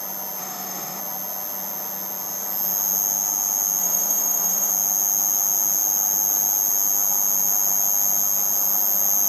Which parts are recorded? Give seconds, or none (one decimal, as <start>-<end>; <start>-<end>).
0.0-0.4; 1.0-3.8; 4.7-9.3